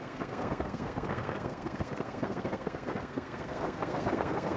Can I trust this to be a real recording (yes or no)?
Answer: no